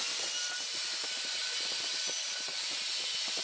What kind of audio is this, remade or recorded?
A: recorded